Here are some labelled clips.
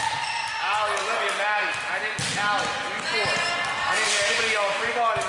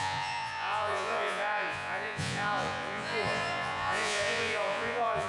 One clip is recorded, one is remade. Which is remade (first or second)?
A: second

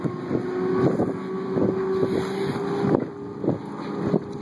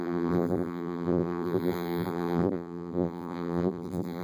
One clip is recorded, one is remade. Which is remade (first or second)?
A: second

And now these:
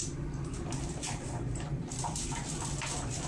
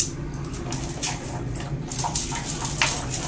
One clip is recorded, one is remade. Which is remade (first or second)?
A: first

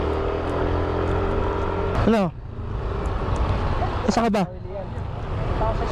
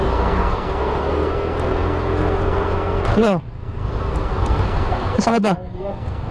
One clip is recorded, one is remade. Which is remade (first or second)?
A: second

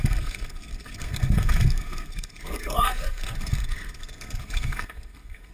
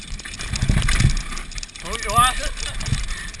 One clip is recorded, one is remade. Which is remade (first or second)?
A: first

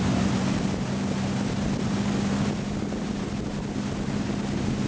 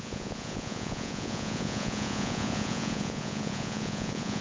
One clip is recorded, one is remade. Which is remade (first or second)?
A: second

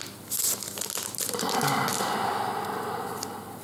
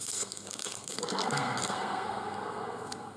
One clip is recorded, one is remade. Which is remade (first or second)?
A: second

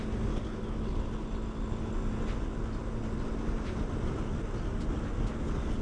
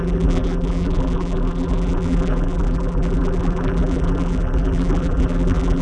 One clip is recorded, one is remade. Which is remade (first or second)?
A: second